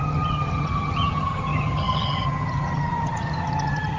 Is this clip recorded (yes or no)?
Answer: no